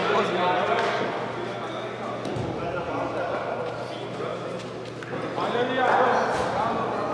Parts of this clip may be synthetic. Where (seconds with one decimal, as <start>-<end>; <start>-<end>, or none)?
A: none